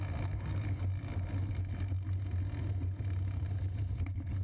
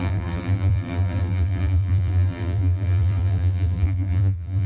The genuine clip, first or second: first